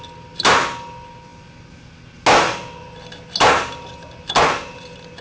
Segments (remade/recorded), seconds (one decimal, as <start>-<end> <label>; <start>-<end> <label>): 0.0-5.2 recorded